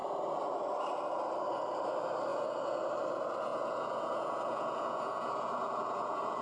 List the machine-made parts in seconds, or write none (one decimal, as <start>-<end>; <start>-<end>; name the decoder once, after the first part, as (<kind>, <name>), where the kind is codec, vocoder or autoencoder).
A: 2.3-2.9 (vocoder, Vocos); 3.5-6.4